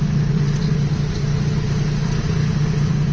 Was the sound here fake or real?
real